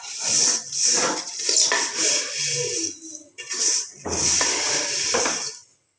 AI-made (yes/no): no